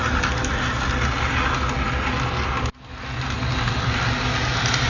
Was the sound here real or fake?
real